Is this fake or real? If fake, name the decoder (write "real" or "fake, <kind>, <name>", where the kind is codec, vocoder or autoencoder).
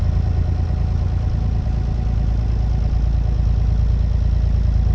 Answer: real